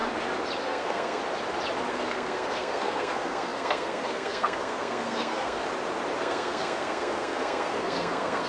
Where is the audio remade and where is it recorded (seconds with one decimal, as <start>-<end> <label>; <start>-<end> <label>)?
0.0-0.6 recorded; 0.6-1.2 remade; 1.2-1.9 recorded; 1.9-5.6 remade; 5.6-6.2 recorded; 6.2-8.5 remade

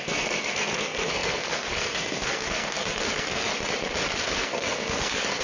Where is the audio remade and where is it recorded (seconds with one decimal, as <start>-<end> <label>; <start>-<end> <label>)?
0.0-3.5 remade; 3.5-4.2 recorded; 4.2-5.4 remade

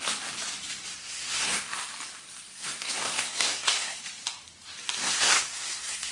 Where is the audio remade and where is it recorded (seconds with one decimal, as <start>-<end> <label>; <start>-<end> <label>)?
0.0-1.0 recorded; 1.0-1.9 remade; 1.9-2.5 recorded; 2.5-4.0 remade; 4.0-5.0 recorded; 5.0-6.1 remade

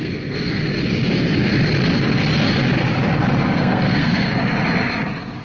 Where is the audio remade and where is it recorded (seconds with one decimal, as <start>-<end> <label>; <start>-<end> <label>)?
0.0-0.6 remade; 0.6-3.6 recorded; 3.6-4.3 remade; 4.3-5.4 recorded

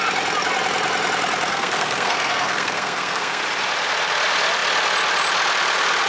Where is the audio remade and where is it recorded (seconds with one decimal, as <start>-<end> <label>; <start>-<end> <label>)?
0.0-1.5 recorded; 1.5-3.4 remade; 3.4-6.1 recorded

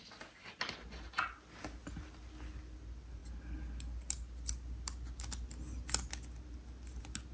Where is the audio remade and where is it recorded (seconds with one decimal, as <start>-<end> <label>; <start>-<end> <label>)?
0.0-7.3 recorded

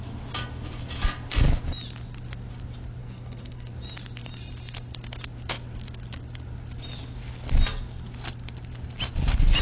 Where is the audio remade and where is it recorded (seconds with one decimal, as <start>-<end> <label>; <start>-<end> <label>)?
0.0-3.0 recorded; 3.0-3.7 remade; 3.7-9.6 recorded